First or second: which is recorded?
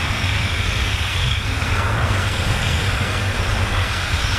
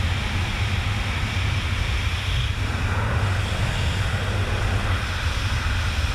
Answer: second